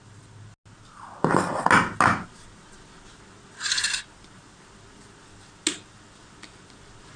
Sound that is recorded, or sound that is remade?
recorded